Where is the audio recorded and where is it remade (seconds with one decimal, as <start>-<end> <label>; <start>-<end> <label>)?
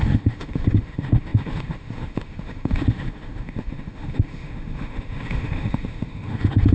0.0-6.7 remade